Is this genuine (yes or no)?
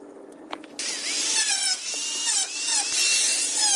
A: yes